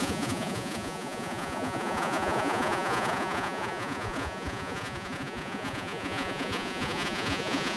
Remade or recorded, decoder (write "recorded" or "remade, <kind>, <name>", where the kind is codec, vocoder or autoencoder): remade, vocoder, Vocos